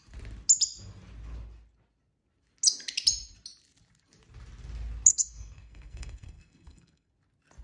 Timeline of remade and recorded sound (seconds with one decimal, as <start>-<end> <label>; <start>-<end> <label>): 0.0-5.1 recorded; 5.1-7.1 remade; 7.1-7.6 recorded